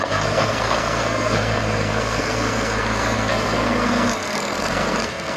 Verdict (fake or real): fake